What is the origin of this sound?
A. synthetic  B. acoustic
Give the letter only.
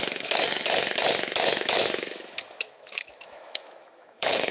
A